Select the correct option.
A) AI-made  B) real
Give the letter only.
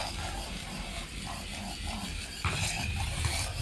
B